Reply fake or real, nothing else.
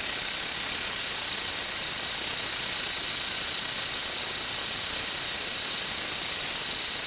real